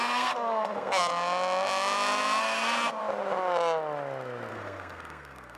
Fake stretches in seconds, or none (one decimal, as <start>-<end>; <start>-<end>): 0.0-1.1; 2.4-3.0; 4.5-5.6